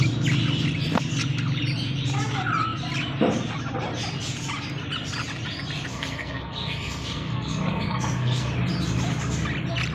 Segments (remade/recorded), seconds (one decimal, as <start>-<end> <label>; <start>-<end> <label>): 0.0-5.9 recorded; 5.9-8.5 remade; 8.5-9.9 recorded